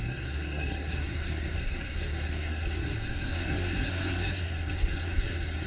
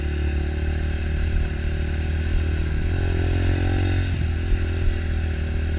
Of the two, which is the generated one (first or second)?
first